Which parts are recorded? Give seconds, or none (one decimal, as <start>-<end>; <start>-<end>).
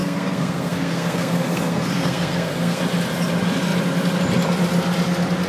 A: 2.8-5.5